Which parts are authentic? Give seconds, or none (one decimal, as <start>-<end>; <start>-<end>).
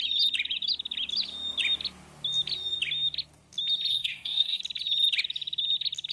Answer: 0.0-3.9; 4.6-6.1